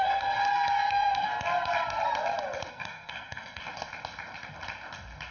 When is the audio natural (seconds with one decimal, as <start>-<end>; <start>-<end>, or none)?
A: 0.4-0.9; 1.3-2.7; 3.6-5.3